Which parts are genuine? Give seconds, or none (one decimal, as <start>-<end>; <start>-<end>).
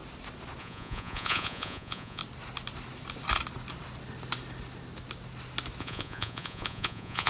0.0-0.6; 2.2-5.8